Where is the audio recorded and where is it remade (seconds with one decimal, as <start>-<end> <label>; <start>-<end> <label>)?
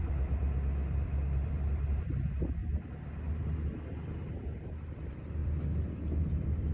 0.0-2.6 remade; 2.6-4.4 recorded; 4.4-6.7 remade